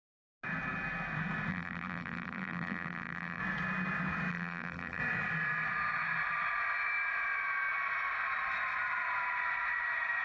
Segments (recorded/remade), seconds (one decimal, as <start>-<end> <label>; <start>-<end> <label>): 0.0-1.5 recorded; 1.5-3.4 remade; 3.4-4.3 recorded; 4.3-5.0 remade; 5.0-10.2 recorded